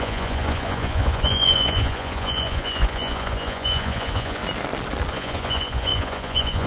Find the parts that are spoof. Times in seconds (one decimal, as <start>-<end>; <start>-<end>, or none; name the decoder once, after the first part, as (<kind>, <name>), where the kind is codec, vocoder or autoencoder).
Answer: 0.0-4.4 (vocoder, Vocos); 5.1-6.7

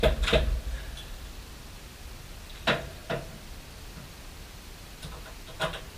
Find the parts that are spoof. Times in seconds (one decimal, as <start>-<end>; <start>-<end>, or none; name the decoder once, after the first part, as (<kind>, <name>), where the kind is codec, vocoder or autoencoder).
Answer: none